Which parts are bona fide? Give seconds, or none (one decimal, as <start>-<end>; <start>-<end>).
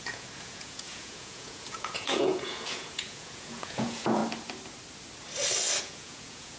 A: 4.2-5.8